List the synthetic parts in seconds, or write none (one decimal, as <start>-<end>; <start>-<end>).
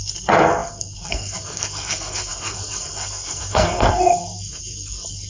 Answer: 0.0-5.3